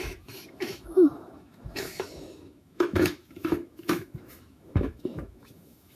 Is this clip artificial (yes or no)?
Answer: yes